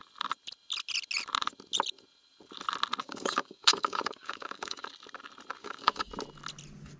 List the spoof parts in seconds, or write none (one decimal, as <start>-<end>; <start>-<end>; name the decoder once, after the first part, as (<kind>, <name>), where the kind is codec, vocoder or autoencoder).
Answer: 3.0-4.9 (codec, DAC); 5.6-6.1